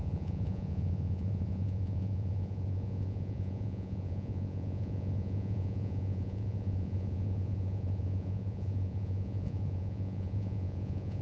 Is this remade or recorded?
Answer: remade